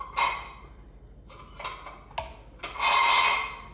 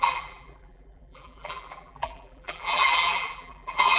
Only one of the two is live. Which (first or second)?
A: first